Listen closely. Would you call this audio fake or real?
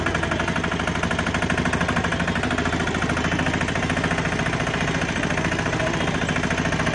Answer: real